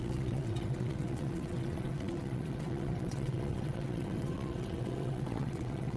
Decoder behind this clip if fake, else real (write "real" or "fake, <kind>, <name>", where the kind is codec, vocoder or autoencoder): fake, vocoder, WaveNeXt